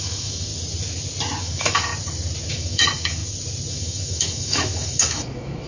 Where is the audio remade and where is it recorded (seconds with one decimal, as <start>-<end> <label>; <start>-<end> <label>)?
0.0-0.5 remade; 0.5-1.4 recorded; 1.4-1.9 remade; 1.9-2.5 recorded; 2.5-3.2 remade; 3.2-3.7 recorded; 3.7-5.7 remade